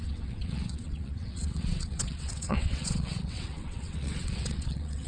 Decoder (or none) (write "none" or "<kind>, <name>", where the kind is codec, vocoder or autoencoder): vocoder, WaveNeXt